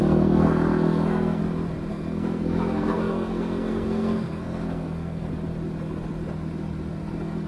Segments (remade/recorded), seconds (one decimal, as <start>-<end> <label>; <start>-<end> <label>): 0.0-1.4 remade; 1.4-1.9 recorded; 1.9-5.3 remade; 5.3-7.5 recorded

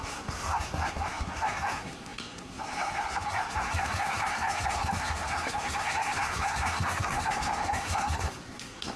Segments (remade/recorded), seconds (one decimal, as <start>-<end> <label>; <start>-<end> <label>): 0.0-9.0 remade

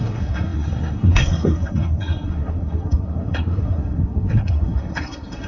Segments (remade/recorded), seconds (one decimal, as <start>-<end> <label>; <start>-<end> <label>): 0.0-5.5 remade